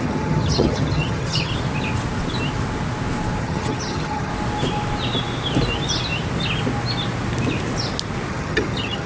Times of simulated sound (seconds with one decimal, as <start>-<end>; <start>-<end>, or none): 0.0-1.5; 3.4-4.3; 8.3-9.1